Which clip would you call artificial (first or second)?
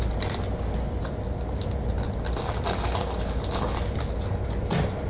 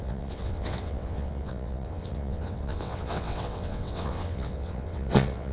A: second